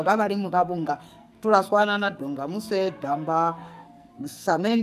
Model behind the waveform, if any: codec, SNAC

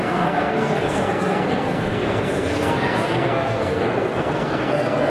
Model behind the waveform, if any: codec, SNAC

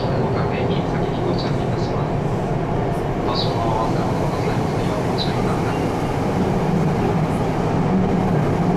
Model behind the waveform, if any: none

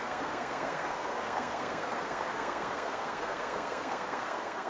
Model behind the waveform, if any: codec, SNAC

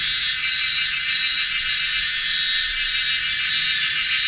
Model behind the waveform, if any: none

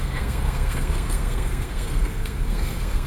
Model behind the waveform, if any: codec, SNAC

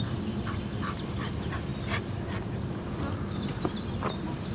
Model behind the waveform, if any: none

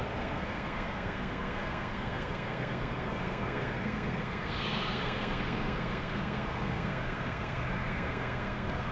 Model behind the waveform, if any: codec, SNAC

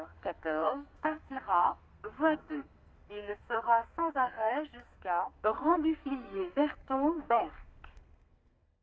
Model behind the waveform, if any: codec, SNAC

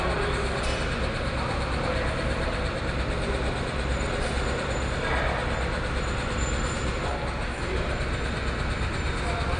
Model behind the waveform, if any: none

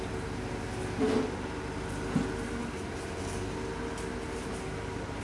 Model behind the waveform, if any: none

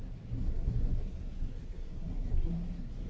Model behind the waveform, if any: codec, SNAC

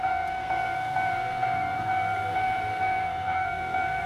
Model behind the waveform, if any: codec, SNAC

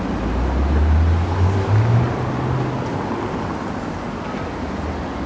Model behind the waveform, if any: none